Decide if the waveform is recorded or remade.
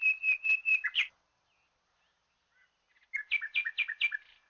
recorded